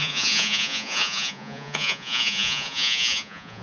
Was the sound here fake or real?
fake